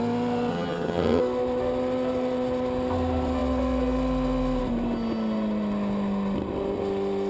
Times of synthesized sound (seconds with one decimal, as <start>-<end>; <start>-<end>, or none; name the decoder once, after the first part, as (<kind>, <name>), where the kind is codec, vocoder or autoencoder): 0.5-1.2 (vocoder, HiFi-GAN)